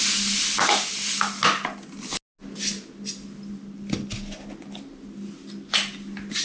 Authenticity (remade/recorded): recorded